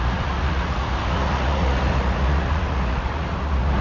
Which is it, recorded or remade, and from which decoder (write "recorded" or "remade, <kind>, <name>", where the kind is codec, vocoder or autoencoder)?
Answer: remade, vocoder, Vocos